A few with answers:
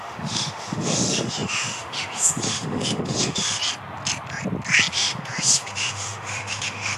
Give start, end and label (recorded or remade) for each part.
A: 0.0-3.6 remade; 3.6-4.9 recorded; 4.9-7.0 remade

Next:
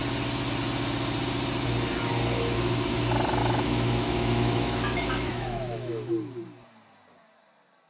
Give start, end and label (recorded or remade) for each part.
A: 0.0-3.4 recorded; 3.4-6.1 remade; 6.1-7.9 recorded

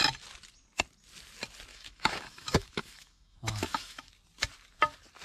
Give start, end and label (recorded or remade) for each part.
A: 0.0-1.7 recorded; 1.7-4.1 remade; 4.1-5.2 recorded

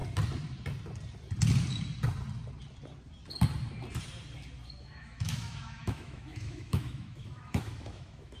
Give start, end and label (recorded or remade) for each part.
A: 0.0-4.8 recorded; 4.8-8.4 remade

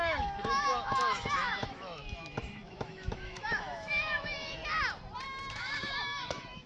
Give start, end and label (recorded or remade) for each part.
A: 0.0-4.6 remade; 4.6-5.5 recorded; 5.5-6.7 remade

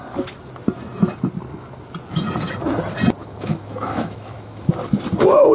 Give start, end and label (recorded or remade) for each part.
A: 0.0-3.2 recorded; 3.2-4.7 remade; 4.7-5.5 recorded

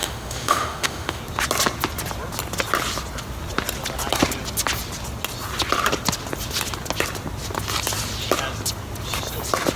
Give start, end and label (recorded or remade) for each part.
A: 0.0-1.2 remade; 1.2-9.8 recorded